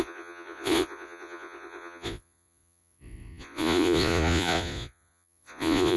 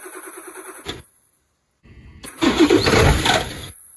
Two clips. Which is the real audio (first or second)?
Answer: second